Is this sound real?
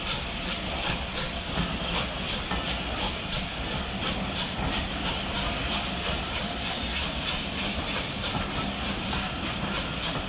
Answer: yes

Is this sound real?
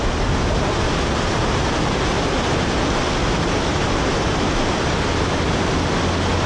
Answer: yes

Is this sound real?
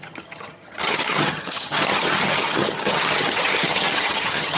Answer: no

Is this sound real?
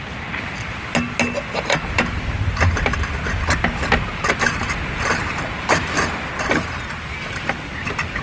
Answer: yes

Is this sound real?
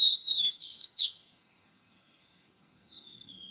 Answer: no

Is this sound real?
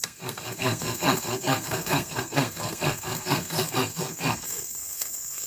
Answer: no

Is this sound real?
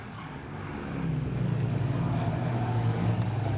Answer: no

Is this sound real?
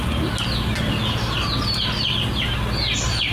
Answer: yes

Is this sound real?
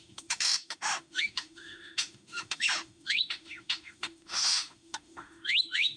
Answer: no